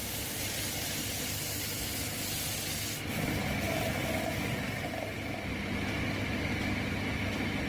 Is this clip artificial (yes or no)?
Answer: no